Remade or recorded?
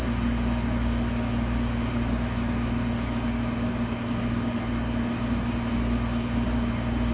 recorded